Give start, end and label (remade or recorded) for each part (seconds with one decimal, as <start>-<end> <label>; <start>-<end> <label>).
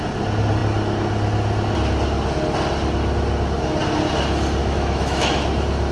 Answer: 0.0-4.6 recorded; 4.6-5.4 remade; 5.4-5.9 recorded